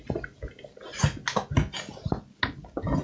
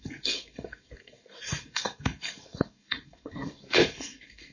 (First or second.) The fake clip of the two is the second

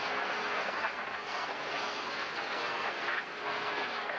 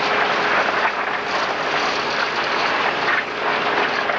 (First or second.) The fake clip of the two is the first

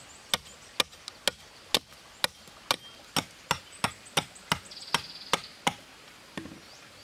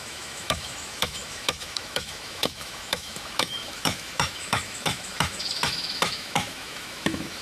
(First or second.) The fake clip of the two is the second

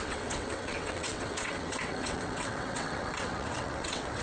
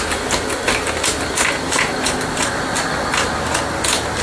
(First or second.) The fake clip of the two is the first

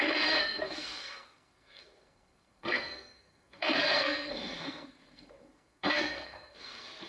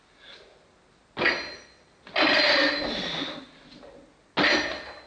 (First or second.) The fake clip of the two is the first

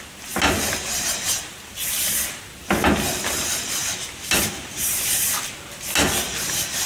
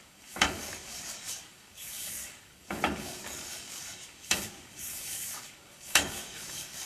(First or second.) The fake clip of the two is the second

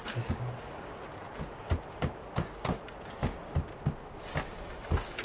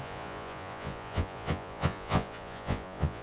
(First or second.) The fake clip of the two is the second